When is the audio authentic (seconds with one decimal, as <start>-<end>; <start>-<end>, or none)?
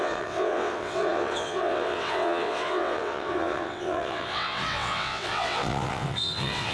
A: none